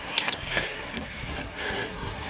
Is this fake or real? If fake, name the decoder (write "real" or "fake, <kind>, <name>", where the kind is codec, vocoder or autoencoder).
fake, codec, SNAC